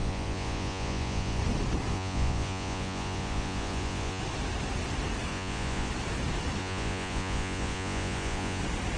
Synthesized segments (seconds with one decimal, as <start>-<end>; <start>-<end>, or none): 0.0-1.4; 1.9-4.2; 5.3-5.9; 6.6-8.6